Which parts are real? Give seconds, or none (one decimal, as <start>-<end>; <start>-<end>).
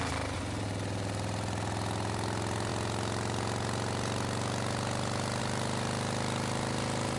0.0-7.2